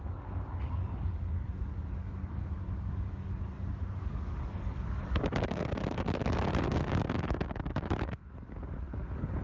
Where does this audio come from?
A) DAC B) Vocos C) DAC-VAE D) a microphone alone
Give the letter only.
A